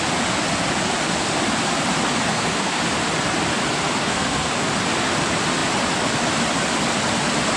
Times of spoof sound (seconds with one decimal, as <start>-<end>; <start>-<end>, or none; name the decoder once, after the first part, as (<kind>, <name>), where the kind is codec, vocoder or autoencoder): 2.3-2.8 (codec, SNAC); 4.0-4.5